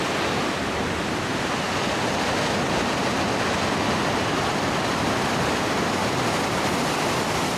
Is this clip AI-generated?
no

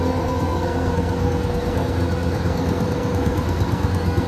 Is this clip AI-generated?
yes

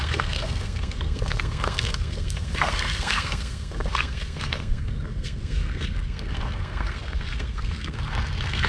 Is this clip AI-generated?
yes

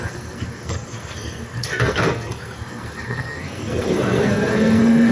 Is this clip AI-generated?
yes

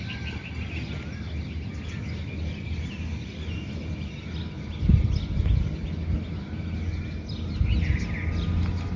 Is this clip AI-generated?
no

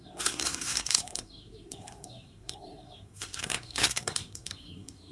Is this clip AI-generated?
yes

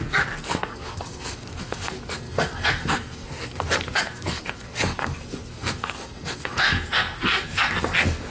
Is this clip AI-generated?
yes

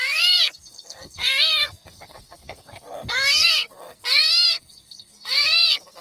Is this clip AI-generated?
yes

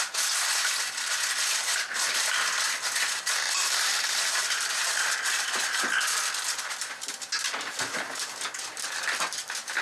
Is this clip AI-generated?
no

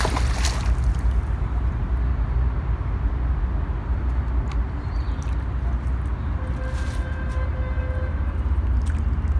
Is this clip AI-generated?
no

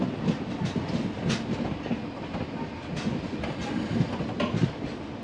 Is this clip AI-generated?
no